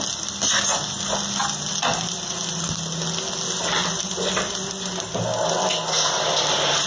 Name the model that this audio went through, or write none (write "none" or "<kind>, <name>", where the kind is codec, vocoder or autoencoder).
none